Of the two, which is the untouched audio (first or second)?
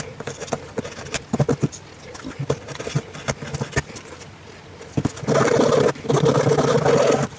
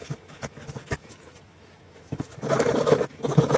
first